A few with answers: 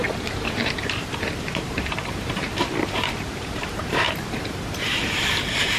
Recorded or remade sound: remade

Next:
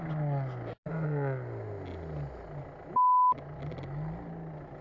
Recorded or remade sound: recorded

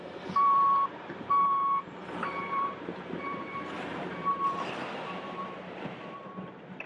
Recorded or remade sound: remade